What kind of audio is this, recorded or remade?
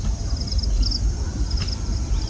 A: recorded